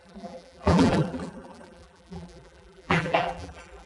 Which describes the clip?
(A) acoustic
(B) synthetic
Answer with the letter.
B